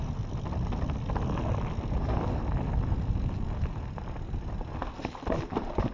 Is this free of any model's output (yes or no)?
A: yes